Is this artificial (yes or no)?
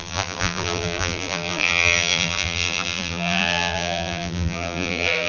yes